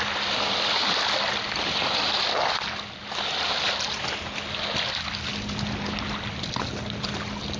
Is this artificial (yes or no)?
no